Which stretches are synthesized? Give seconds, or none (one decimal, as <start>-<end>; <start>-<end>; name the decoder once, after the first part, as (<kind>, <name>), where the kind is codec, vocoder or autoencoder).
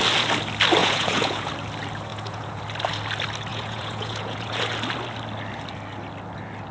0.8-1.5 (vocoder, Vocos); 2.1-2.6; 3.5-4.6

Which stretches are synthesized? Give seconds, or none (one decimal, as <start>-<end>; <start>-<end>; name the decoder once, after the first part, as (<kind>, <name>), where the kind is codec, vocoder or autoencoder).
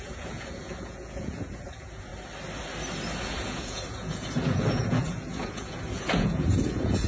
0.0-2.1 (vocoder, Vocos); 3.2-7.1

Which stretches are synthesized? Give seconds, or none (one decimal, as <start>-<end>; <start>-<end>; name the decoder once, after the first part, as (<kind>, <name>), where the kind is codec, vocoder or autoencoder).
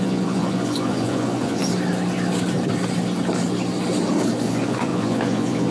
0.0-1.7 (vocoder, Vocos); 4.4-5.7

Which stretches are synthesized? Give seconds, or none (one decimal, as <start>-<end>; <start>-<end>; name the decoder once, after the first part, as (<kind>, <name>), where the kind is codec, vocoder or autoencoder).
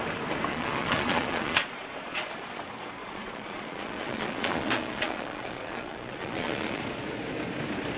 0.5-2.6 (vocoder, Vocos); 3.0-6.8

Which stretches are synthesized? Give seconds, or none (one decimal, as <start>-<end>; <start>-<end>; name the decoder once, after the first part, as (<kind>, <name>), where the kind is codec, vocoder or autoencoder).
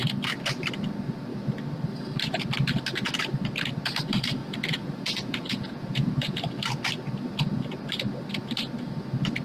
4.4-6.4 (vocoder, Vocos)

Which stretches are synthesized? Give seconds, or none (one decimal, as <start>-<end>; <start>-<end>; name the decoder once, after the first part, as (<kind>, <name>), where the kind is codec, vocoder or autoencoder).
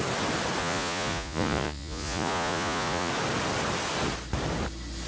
0.6-3.1 (vocoder, Vocos)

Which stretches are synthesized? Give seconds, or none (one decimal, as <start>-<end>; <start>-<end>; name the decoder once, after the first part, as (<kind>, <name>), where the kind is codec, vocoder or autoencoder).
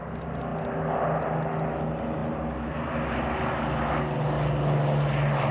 none